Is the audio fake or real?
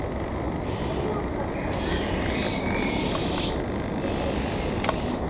real